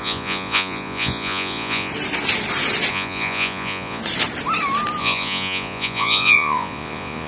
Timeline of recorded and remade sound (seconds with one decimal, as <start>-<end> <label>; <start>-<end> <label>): 0.0-1.9 remade; 1.9-2.9 recorded; 2.9-4.0 remade; 4.0-5.0 recorded; 5.0-7.3 remade